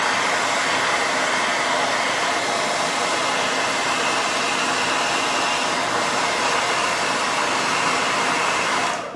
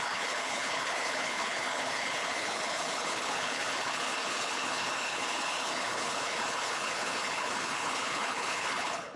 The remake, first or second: second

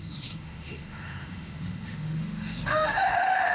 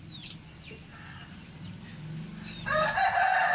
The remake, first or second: first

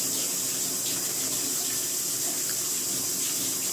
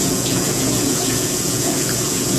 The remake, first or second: second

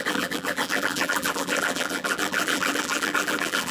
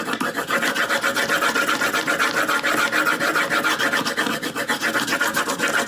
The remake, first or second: first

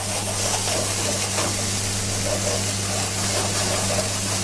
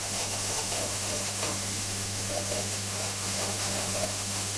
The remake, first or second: second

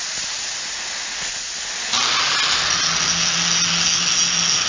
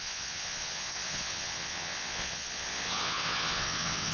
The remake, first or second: second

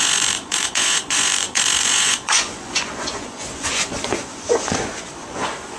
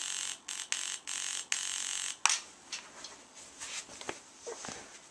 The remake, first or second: first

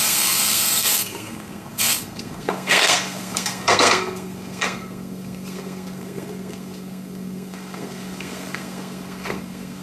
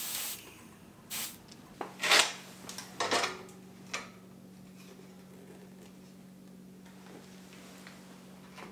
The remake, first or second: first